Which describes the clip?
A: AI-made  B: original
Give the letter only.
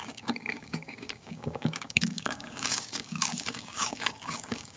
A